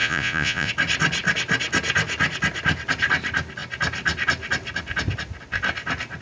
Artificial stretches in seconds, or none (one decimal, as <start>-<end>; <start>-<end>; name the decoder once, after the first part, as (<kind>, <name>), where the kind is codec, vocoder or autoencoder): 0.0-0.7 (vocoder, Vocos)